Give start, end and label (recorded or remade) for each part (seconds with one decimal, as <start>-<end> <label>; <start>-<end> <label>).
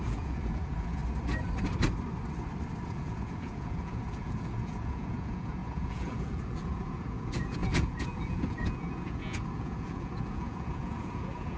0.0-1.0 remade; 1.0-2.9 recorded; 2.9-11.6 remade